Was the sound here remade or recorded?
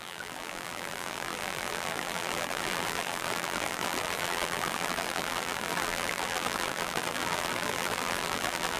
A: remade